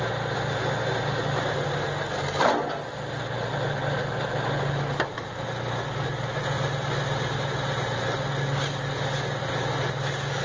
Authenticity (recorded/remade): recorded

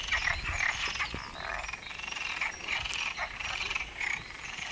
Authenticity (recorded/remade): recorded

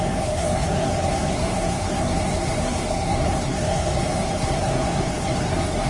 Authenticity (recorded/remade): remade